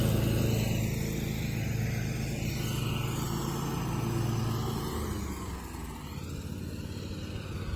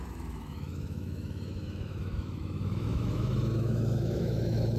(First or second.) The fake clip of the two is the second